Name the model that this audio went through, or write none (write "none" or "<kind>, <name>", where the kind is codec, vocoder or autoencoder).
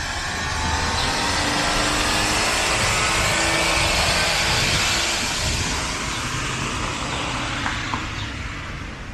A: none